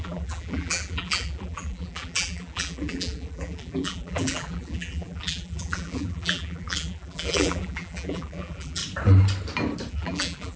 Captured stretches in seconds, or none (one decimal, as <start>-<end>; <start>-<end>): 8.8-9.9